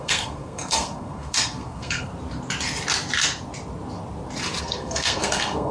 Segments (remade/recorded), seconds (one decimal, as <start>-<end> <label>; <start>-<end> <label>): 0.0-2.1 remade; 2.1-4.6 recorded; 4.6-5.7 remade